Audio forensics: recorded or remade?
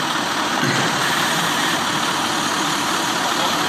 recorded